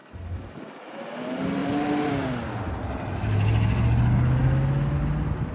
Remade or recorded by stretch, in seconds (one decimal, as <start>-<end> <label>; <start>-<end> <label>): 0.0-1.6 recorded; 1.6-2.1 remade; 2.1-5.5 recorded